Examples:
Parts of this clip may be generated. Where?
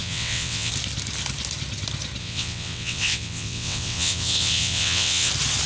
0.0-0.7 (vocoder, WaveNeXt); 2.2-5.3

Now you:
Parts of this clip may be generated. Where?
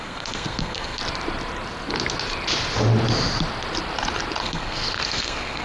0.0-1.0 (codec, SNAC); 4.4-5.6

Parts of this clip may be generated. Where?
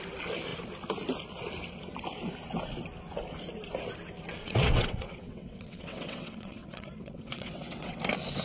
4.4-8.0 (vocoder, WaveNeXt)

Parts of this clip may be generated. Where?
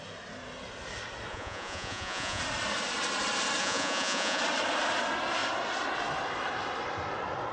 1.3-2.4 (vocoder, Vocos); 3.6-4.4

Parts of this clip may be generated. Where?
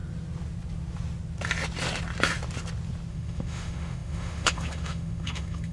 3.1-5.7 (autoencoder, DAC-VAE)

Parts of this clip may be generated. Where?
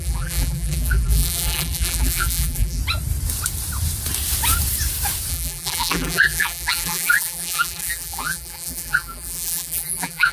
0.0-2.8 (vocoder, BigVGAN v2); 5.3-10.3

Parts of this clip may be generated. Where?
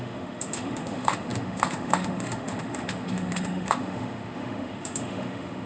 0.0-5.7 (autoencoder, DAC-VAE)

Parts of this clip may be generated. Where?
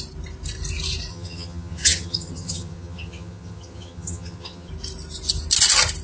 1.1-4.7 (vocoder, HiFi-GAN)